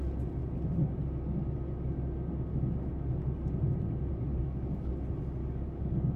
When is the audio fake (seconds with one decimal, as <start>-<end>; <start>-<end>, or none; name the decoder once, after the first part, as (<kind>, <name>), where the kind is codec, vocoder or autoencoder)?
4.3-4.9 (codec, DAC); 5.4-6.2